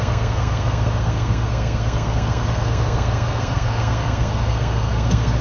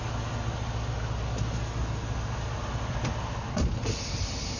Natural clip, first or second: second